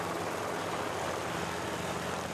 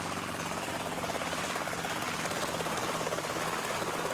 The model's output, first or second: second